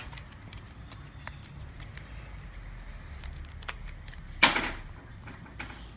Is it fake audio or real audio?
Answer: real